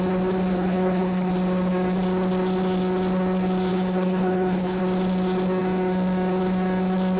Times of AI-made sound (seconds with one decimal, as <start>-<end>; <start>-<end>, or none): 0.5-1.3; 3.7-4.8